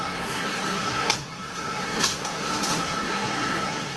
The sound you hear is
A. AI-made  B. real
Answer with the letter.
A